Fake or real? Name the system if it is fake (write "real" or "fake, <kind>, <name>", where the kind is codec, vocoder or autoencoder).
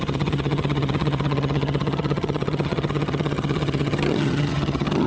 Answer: fake, vocoder, HiFi-GAN